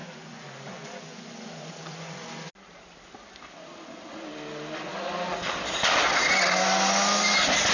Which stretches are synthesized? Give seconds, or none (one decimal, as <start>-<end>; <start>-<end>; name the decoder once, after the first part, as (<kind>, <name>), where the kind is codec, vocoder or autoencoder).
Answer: 0.0-2.5 (vocoder, Vocos)